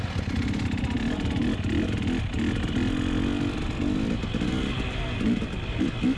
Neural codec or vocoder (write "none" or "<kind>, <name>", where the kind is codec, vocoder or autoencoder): none